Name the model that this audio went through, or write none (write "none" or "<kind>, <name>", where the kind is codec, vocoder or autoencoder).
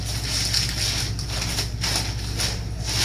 none